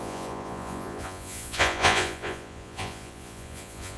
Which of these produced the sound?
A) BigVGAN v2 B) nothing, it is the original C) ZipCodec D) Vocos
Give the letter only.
D